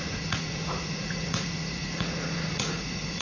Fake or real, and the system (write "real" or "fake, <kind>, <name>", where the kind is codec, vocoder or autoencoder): fake, vocoder, Vocos